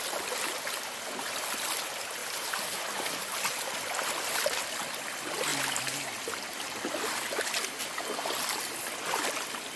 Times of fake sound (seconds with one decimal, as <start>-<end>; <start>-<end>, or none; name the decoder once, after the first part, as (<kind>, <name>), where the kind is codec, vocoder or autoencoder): 2.2-2.8 (vocoder, BigVGAN v2)